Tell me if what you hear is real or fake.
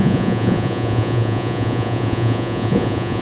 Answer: fake